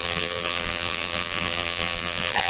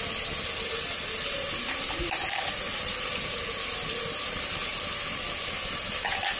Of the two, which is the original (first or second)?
second